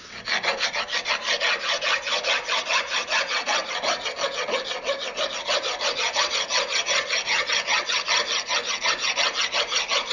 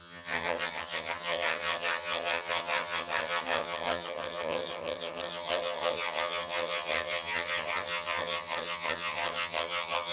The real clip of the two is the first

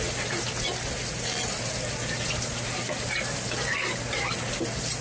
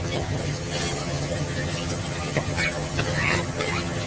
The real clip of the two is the first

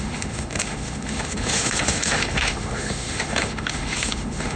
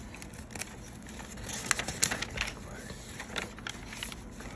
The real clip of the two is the second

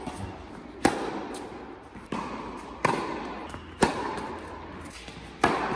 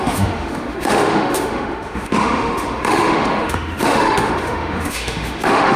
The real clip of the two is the first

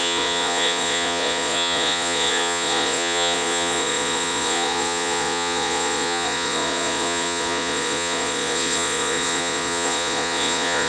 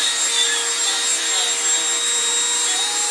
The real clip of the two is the second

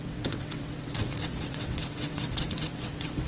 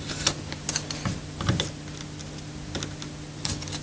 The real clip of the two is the second